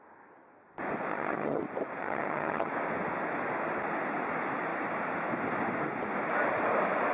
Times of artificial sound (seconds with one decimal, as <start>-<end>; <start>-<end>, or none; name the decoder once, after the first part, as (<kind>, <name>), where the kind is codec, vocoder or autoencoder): 1.1-1.6 (vocoder, HiFi-GAN); 2.0-2.7